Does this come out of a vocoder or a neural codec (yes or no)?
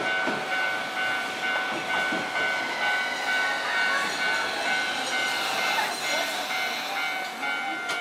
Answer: no